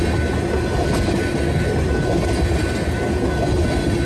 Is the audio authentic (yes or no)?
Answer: yes